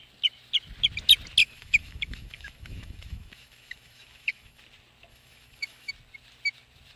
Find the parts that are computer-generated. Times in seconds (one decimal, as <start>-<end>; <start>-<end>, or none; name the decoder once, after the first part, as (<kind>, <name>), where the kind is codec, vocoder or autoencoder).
1.4-4.6 (autoencoder, DAC-VAE); 5.1-5.9